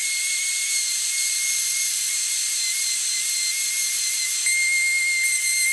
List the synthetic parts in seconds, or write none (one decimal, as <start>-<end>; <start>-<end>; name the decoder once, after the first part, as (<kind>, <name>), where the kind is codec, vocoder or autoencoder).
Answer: 0.0-3.4 (vocoder, BigVGAN v2)